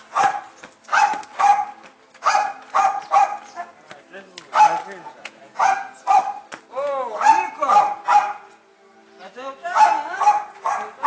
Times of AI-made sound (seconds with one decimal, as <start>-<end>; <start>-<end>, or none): 5.0-6.1